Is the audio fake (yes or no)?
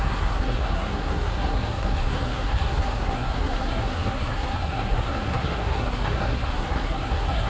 yes